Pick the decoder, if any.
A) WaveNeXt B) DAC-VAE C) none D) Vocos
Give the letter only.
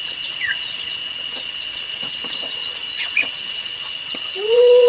A